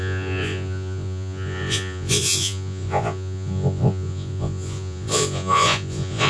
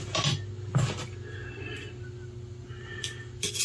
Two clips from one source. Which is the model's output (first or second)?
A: first